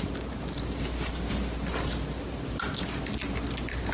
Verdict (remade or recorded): recorded